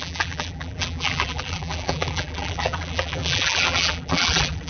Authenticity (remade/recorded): remade